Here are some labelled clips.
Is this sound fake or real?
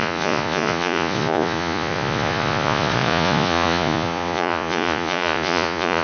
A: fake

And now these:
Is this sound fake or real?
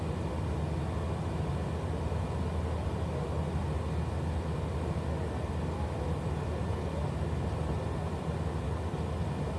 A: real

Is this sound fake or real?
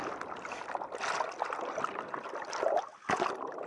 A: real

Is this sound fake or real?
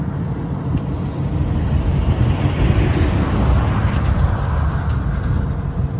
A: real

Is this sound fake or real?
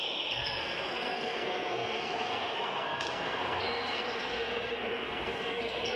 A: fake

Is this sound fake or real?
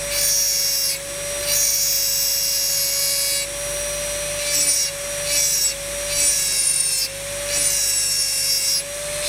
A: real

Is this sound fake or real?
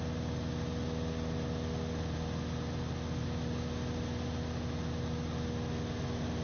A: real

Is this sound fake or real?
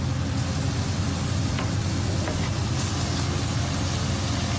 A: real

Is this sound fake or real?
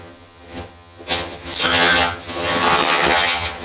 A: fake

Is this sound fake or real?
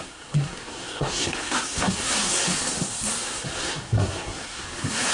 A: fake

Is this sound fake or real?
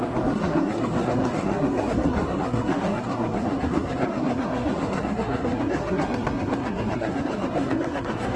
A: fake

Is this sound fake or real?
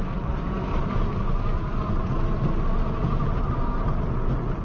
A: real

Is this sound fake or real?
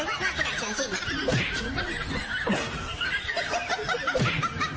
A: real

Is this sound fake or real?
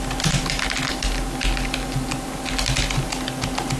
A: real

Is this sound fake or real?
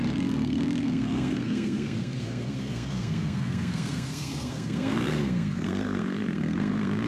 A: fake